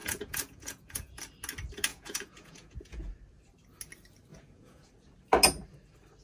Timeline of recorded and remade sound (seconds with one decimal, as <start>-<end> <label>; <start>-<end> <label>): 0.0-1.2 remade; 1.2-1.9 recorded; 1.9-3.1 remade; 3.1-4.3 recorded; 4.3-4.9 remade; 4.9-6.2 recorded